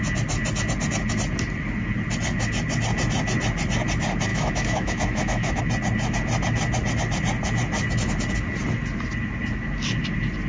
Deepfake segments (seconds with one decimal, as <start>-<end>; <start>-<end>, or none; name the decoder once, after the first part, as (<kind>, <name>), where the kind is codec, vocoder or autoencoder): 4.3-5.6 (autoencoder, DAC-VAE)